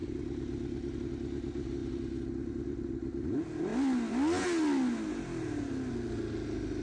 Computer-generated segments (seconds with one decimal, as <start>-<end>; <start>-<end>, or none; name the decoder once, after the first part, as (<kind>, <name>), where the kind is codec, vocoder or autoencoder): none